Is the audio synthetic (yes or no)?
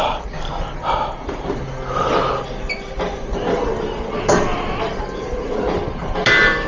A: no